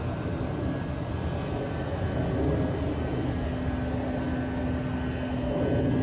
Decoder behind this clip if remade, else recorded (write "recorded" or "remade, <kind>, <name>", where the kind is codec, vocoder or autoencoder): recorded